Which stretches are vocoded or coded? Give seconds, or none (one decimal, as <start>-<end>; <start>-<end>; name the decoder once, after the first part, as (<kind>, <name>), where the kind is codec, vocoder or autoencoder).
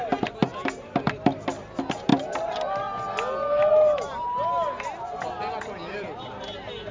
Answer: none